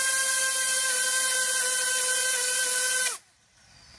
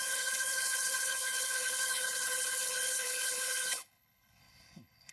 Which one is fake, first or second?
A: second